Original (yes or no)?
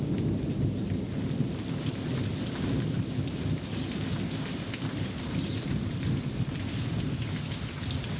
yes